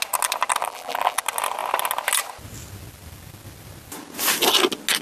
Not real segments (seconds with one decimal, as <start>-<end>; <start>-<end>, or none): 0.6-1.2